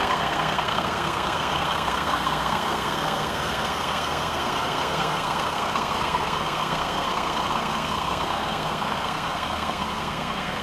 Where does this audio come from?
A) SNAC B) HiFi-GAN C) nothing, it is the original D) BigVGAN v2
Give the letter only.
A